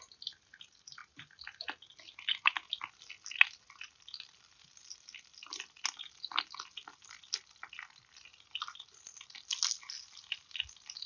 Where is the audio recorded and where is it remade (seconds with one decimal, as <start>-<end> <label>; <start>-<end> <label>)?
0.0-11.1 recorded